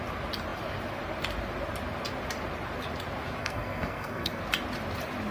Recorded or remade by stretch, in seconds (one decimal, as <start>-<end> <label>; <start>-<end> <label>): 0.0-3.4 recorded; 3.4-4.4 remade; 4.4-5.3 recorded